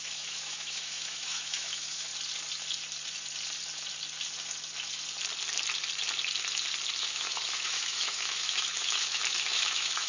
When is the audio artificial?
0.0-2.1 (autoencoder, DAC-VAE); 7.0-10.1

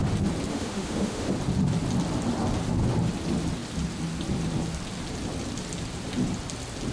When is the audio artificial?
0.5-1.3 (autoencoder, DAC-VAE)

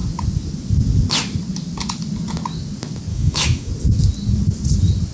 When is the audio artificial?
3.1-3.7 (autoencoder, DAC-VAE)

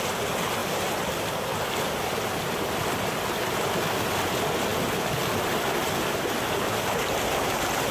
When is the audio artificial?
none

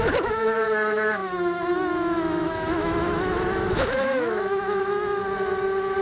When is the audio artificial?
0.0-5.2 (autoencoder, DAC-VAE)